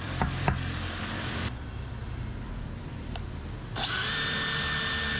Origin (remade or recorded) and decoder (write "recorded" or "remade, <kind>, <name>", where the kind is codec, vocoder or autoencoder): remade, vocoder, BigVGAN v2